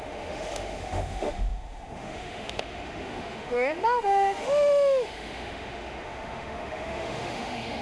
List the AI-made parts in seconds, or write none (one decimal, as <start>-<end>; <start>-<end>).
0.0-7.8